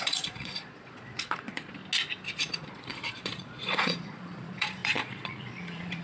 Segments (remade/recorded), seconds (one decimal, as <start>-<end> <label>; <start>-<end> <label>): 0.0-1.8 remade; 1.8-2.4 recorded; 2.4-6.0 remade